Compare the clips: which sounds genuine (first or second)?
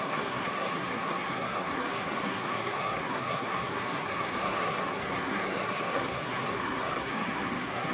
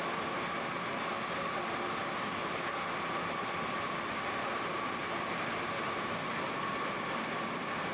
second